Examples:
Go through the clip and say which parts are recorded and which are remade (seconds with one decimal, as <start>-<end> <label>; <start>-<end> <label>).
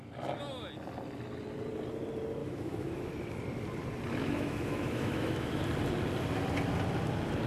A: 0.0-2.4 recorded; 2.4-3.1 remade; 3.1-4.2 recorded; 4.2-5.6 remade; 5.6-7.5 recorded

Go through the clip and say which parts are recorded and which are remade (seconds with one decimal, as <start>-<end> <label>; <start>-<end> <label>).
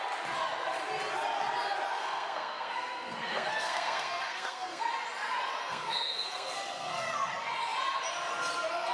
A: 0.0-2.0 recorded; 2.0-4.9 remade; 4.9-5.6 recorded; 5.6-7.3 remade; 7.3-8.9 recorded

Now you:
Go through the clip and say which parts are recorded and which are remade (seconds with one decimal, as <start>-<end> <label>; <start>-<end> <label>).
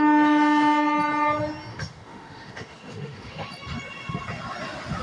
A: 0.0-1.7 recorded; 1.7-3.5 remade; 3.5-5.0 recorded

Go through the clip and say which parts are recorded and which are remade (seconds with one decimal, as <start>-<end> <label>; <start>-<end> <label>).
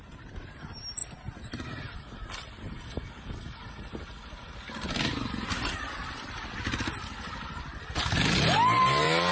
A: 0.0-9.3 recorded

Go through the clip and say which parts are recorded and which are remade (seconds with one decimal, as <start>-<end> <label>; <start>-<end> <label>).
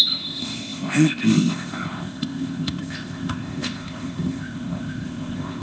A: 0.0-5.6 remade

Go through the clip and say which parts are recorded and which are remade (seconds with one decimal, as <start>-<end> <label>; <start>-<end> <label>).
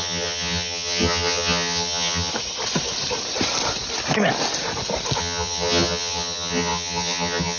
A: 0.0-2.3 remade; 2.3-5.2 recorded; 5.2-7.6 remade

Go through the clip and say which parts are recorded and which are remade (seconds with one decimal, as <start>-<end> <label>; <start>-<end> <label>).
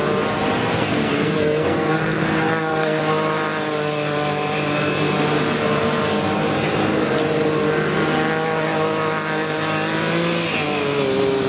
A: 0.0-0.7 recorded; 0.7-3.0 remade; 3.0-11.5 recorded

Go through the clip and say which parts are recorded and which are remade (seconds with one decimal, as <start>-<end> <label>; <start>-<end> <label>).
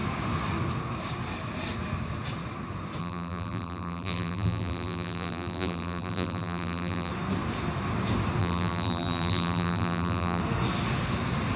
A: 0.0-3.0 recorded; 3.0-7.1 remade; 7.1-8.4 recorded; 8.4-10.4 remade; 10.4-11.6 recorded